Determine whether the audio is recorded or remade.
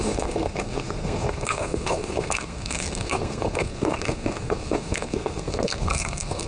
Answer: remade